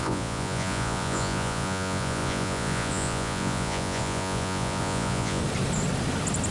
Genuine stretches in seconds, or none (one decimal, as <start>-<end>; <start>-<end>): 5.4-6.5